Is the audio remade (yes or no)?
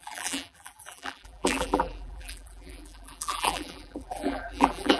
yes